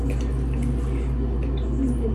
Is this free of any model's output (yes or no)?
yes